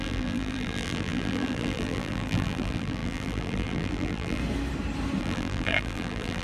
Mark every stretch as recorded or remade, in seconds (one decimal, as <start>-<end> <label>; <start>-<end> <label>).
0.0-4.4 remade; 4.4-5.2 recorded; 5.2-6.4 remade